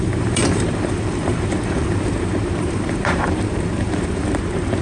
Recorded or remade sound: remade